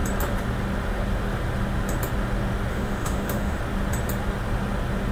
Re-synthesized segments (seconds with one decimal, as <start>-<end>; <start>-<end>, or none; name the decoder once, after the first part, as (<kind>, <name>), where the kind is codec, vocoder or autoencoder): 2.7-3.6 (autoencoder, DAC-VAE)